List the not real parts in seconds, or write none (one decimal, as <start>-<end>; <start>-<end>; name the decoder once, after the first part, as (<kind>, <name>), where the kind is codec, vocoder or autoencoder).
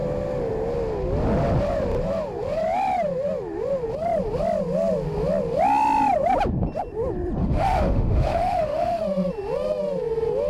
7.4-9.0 (autoencoder, DAC-VAE)